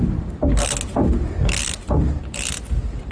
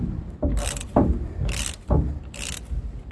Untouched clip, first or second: first